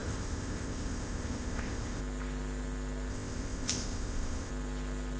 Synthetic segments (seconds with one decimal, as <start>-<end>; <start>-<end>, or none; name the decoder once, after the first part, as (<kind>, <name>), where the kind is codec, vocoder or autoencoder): 0.0-2.0 (codec, ZipCodec); 3.1-4.5